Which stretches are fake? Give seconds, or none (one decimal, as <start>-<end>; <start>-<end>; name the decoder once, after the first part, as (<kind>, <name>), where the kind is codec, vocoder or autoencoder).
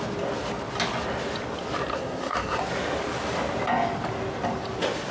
1.9-2.6 (codec, SNAC)